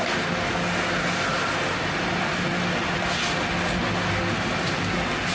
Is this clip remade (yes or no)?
no